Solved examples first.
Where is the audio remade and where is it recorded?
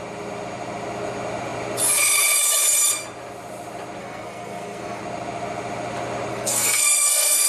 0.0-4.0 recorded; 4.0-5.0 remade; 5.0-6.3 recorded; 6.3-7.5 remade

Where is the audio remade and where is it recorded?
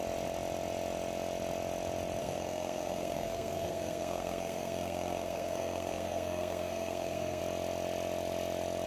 0.0-2.2 recorded; 2.2-7.4 remade; 7.4-8.9 recorded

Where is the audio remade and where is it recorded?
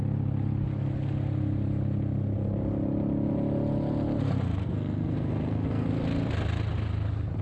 0.0-4.6 recorded; 4.6-5.9 remade; 5.9-7.4 recorded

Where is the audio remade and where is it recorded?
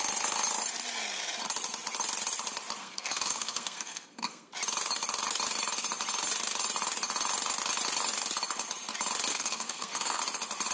0.0-2.8 recorded; 2.8-4.5 remade; 4.5-9.3 recorded; 9.3-10.2 remade; 10.2-10.7 recorded